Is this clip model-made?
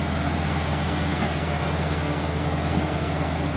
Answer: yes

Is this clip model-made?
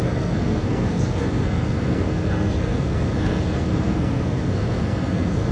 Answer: yes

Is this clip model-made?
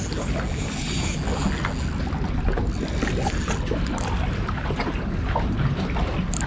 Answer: no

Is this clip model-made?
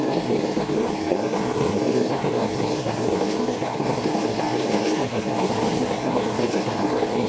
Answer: yes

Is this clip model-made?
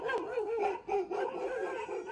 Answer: no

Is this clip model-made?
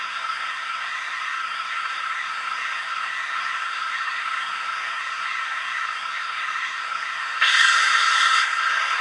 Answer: yes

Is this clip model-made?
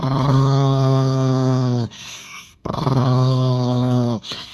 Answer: yes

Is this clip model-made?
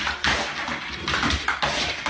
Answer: no